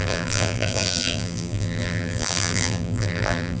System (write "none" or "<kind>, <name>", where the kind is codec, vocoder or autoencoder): vocoder, BigVGAN v2